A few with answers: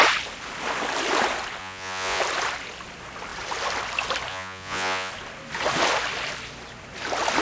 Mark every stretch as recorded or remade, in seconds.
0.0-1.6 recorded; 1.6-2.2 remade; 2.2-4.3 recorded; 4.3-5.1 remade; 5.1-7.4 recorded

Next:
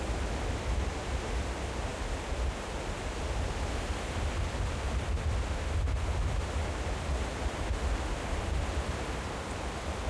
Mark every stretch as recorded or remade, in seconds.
0.0-10.1 recorded

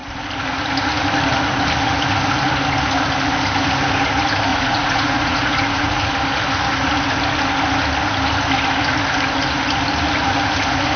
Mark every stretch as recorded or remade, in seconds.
0.0-4.5 recorded; 4.5-6.0 remade; 6.0-11.0 recorded

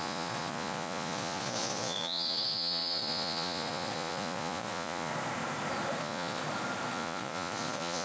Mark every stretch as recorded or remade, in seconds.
0.0-5.1 remade; 5.1-6.0 recorded; 6.0-6.4 remade; 6.4-6.9 recorded; 6.9-8.0 remade

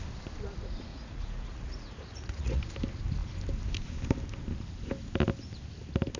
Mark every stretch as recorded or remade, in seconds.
0.0-0.9 recorded; 0.9-2.6 remade; 2.6-6.2 recorded

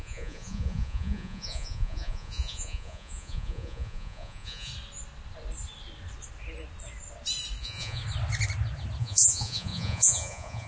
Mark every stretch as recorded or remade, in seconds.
0.0-4.7 remade; 4.7-7.6 recorded; 7.6-8.0 remade; 8.0-9.0 recorded; 9.0-10.7 remade

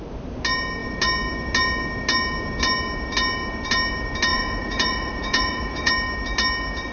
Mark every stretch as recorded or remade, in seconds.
0.0-4.3 recorded; 4.3-5.9 remade; 5.9-6.9 recorded

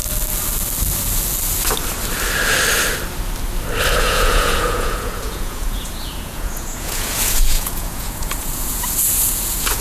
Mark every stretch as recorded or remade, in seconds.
0.0-4.0 recorded; 4.0-9.8 remade